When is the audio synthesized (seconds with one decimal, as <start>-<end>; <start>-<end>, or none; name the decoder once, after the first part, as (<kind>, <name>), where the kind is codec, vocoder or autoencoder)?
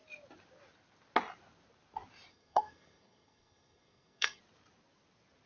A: 2.3-4.4 (codec, SNAC)